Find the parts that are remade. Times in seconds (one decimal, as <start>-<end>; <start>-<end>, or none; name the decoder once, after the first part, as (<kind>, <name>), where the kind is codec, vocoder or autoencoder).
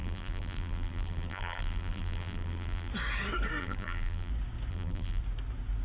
0.0-2.9 (vocoder, BigVGAN v2); 3.6-4.3; 4.7-5.2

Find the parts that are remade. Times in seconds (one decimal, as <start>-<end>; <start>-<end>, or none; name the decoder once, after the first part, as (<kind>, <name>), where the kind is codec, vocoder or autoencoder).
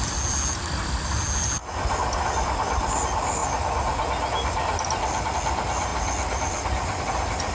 none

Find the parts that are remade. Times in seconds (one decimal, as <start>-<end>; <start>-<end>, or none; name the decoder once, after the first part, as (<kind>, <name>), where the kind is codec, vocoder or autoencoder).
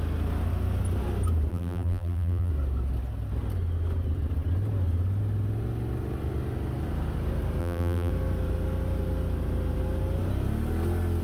1.5-2.5 (vocoder, BigVGAN v2); 7.6-8.1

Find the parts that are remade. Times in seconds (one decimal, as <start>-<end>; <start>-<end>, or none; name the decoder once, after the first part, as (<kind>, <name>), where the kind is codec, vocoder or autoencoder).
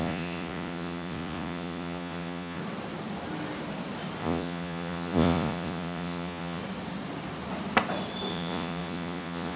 0.0-2.6 (vocoder, Vocos); 4.2-6.6; 8.3-9.6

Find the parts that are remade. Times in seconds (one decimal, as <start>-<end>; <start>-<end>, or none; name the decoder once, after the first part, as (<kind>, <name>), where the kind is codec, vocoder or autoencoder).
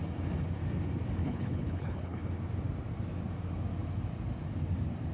1.2-2.3 (codec, HILCodec)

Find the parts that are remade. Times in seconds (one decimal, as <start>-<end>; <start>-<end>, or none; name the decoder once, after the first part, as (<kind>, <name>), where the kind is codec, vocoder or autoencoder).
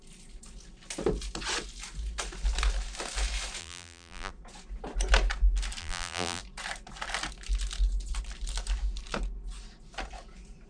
3.6-4.3 (vocoder, BigVGAN v2); 5.8-6.4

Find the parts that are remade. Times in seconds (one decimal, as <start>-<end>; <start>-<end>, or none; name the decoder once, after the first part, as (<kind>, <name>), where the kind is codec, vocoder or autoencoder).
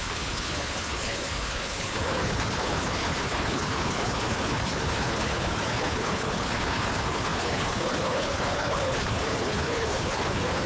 0.0-10.7 (codec, HILCodec)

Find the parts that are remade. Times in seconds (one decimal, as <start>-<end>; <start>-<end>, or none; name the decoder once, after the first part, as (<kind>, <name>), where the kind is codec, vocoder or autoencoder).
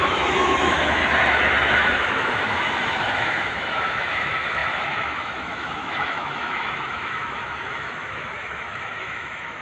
0.0-1.0 (autoencoder, DAC-VAE); 1.7-9.6